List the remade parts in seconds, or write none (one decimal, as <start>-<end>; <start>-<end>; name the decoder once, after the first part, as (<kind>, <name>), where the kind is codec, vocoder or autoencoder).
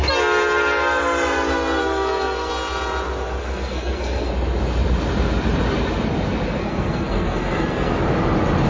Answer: 1.8-2.5 (codec, SNAC); 3.4-4.3; 6.6-7.9